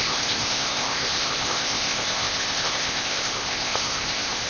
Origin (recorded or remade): remade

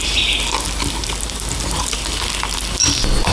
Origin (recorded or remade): recorded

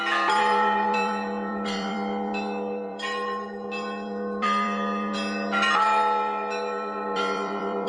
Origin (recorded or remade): remade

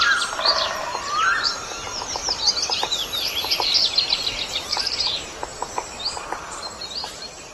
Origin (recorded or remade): remade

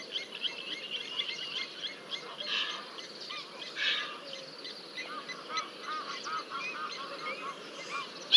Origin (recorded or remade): recorded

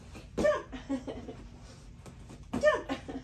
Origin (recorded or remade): recorded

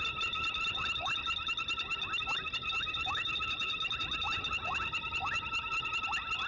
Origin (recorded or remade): recorded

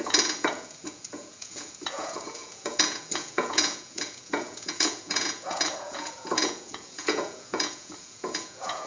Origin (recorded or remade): remade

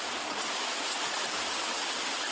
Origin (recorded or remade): recorded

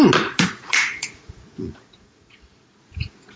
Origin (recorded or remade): remade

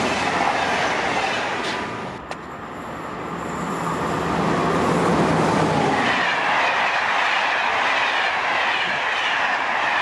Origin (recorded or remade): recorded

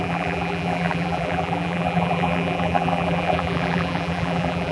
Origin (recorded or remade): remade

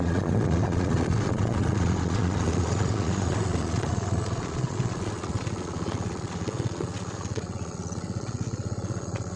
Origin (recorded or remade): remade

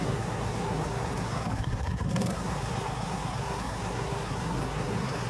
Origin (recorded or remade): remade